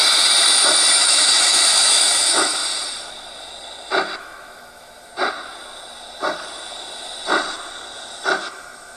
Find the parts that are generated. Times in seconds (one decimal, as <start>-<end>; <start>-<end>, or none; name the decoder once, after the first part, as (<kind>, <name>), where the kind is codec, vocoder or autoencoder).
0.9-2.6 (autoencoder, DAC-VAE); 4.2-5.1; 8.4-9.0